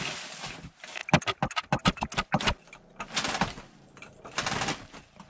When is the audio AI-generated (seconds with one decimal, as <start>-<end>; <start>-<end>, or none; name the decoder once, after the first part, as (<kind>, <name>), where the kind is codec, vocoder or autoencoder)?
none